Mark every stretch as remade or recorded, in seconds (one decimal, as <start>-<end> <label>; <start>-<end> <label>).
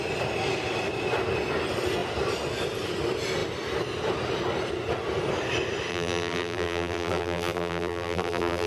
0.0-5.9 recorded; 5.9-8.7 remade